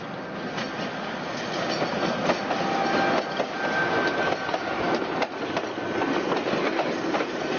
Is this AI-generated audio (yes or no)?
no